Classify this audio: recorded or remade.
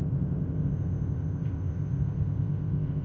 remade